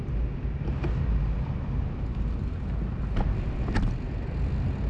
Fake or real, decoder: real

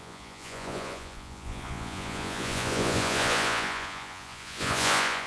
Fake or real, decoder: fake, vocoder, Vocos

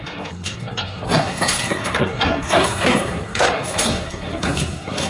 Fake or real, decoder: fake, codec, SNAC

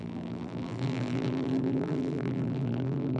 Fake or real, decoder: fake, vocoder, BigVGAN v2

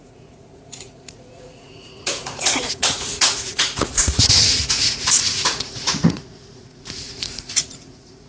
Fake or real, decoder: fake, vocoder, Vocos